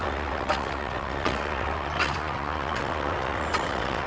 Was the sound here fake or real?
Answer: fake